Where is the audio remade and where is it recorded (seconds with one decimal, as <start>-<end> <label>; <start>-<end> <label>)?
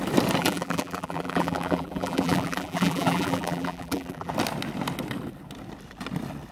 0.0-0.4 recorded; 0.4-4.3 remade; 4.3-6.5 recorded